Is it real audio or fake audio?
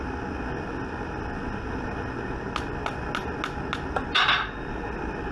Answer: real